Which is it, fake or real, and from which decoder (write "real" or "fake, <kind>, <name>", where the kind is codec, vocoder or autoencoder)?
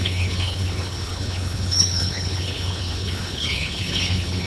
fake, codec, HILCodec